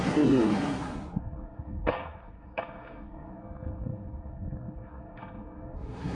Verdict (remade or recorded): remade